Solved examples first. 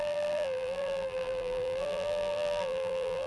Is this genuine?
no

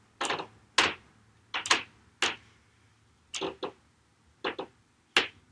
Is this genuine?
yes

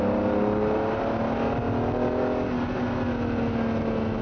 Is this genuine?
yes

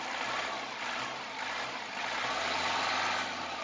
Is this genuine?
yes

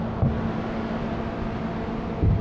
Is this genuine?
yes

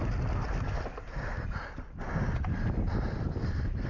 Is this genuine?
yes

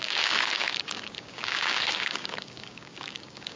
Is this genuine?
no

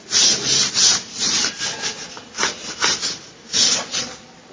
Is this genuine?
yes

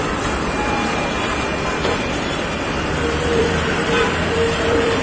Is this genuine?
no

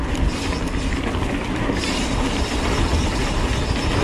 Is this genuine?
yes